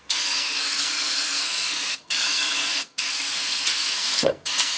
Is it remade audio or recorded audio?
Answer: remade